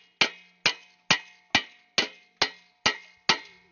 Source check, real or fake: real